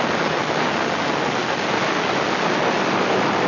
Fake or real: real